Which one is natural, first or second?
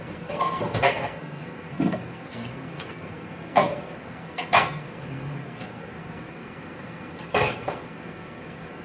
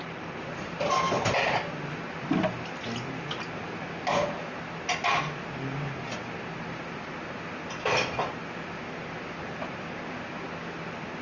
second